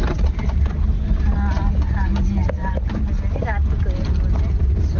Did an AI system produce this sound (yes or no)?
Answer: no